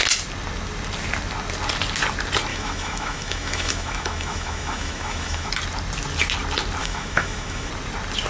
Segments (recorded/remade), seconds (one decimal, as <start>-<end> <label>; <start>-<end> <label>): 0.0-2.5 recorded; 2.5-5.5 remade; 5.5-6.8 recorded; 6.8-7.7 remade; 7.7-8.3 recorded

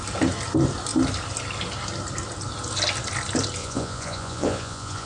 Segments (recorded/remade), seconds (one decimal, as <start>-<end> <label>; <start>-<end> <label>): 0.0-3.6 recorded; 3.6-5.1 remade

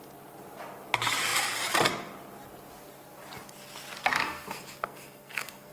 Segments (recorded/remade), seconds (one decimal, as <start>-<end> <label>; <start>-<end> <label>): 0.0-4.0 recorded; 4.0-5.7 remade

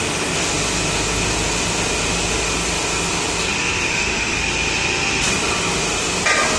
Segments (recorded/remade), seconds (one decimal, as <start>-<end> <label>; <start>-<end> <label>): 0.0-3.9 recorded; 3.9-4.4 remade; 4.4-6.6 recorded